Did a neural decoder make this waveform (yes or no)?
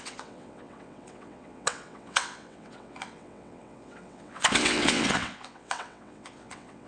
yes